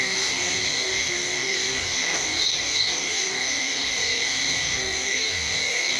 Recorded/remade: remade